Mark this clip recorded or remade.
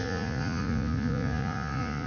remade